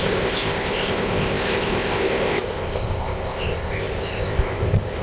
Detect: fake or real fake